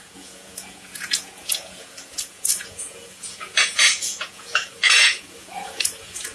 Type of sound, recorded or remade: remade